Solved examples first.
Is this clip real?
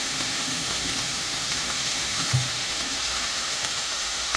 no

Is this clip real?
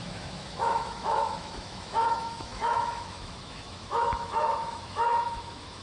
no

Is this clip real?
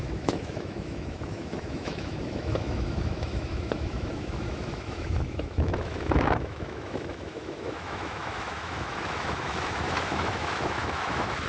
no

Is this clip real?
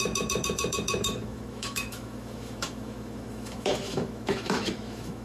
no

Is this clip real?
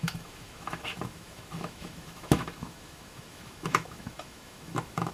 no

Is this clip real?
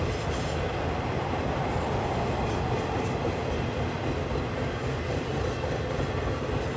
yes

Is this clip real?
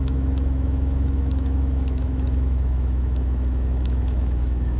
no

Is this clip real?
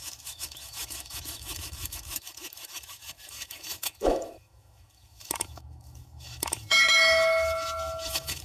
no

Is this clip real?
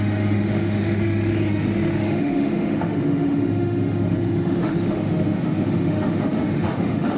no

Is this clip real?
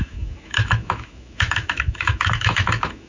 no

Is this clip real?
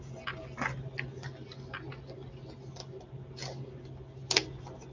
yes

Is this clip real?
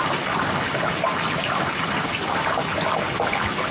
yes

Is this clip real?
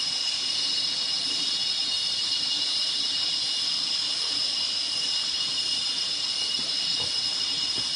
yes